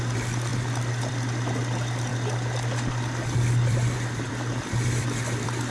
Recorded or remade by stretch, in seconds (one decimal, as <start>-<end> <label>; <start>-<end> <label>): 0.0-5.7 recorded